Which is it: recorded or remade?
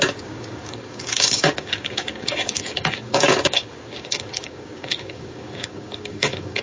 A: remade